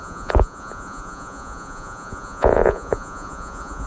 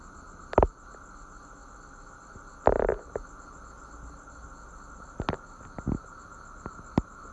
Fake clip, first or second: first